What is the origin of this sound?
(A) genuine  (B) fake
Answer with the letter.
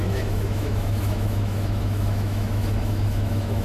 B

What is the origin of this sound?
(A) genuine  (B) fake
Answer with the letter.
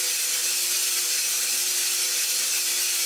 B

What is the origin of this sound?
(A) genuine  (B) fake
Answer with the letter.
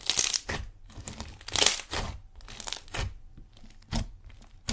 A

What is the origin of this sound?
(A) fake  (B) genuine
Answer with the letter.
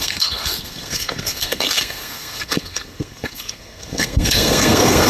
A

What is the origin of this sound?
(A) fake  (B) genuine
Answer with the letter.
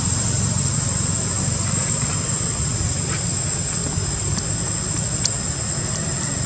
B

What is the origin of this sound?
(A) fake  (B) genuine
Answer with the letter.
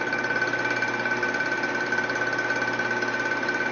B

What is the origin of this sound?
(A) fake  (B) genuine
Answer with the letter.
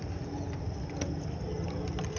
B